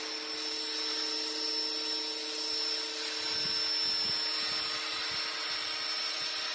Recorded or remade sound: recorded